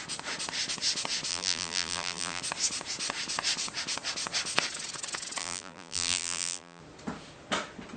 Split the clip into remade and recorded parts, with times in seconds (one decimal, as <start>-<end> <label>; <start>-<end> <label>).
0.0-1.3 recorded; 1.3-2.4 remade; 2.4-5.4 recorded; 5.4-6.8 remade; 6.8-8.0 recorded